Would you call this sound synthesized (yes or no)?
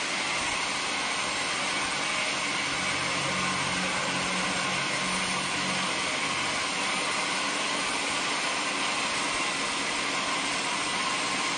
no